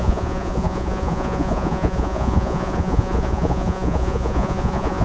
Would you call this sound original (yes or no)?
no